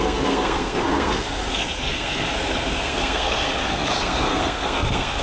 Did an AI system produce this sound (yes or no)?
yes